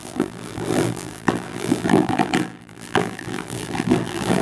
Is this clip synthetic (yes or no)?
yes